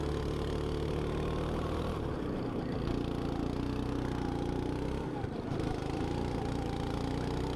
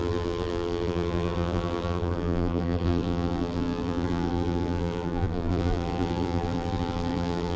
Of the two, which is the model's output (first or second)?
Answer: second